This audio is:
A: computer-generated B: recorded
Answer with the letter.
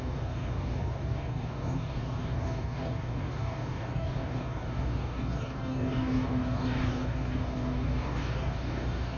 A